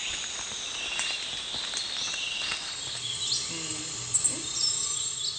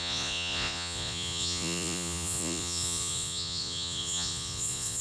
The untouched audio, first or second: first